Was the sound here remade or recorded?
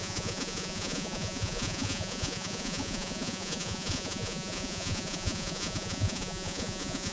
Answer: remade